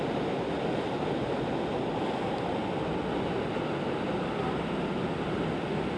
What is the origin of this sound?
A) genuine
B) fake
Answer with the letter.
A